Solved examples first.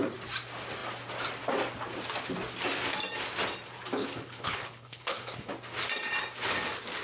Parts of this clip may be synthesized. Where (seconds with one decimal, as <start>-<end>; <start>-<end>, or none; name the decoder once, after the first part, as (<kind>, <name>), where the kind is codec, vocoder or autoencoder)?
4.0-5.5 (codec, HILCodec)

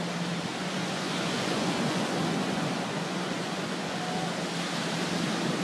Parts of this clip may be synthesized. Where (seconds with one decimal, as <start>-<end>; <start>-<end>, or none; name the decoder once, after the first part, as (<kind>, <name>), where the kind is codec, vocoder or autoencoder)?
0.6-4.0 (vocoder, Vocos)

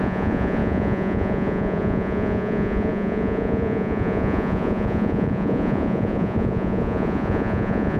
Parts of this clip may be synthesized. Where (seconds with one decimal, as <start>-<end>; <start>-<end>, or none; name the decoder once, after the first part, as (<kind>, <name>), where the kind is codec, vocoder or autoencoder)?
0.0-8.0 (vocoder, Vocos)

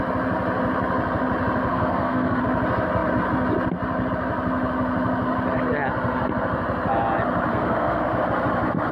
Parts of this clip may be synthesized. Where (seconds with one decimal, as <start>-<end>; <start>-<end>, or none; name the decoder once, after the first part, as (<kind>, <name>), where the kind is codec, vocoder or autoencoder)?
1.7-2.4 (codec, SNAC); 7.5-8.2

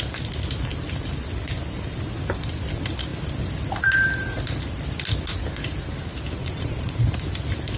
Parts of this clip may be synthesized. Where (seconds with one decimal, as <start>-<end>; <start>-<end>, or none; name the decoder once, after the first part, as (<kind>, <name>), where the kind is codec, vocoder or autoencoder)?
6.4-6.9 (vocoder, Vocos)

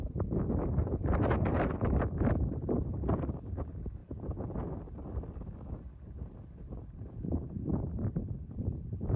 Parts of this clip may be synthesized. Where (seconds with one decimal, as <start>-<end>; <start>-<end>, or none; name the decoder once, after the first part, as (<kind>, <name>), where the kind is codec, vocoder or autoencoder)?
0.0-4.0 (vocoder, BigVGAN v2); 5.8-9.2